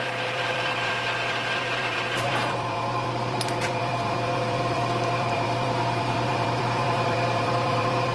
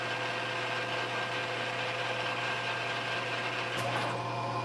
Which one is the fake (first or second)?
first